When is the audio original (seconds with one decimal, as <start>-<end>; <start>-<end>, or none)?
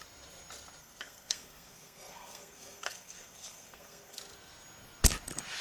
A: 0.0-0.8; 4.2-5.6